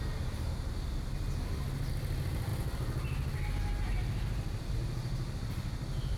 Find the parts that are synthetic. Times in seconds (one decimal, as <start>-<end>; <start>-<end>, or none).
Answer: none

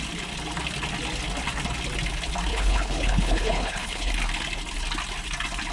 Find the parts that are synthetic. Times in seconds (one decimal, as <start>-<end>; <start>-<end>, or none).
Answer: 2.5-4.1

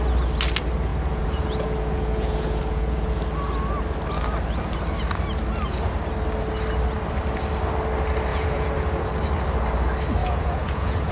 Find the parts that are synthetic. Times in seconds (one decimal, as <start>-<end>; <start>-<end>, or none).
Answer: 0.9-3.1; 8.3-9.1; 10.2-11.1

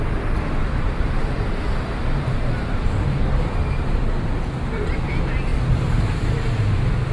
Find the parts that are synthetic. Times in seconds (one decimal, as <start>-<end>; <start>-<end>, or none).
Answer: 0.6-4.0; 5.5-6.4